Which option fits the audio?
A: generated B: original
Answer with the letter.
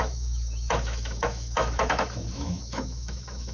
A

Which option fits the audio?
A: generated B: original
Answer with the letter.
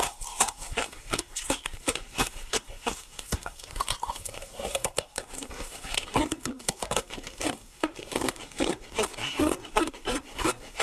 A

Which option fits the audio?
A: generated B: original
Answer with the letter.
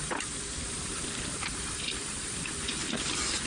A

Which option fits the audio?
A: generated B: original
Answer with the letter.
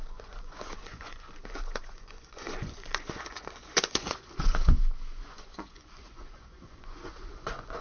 A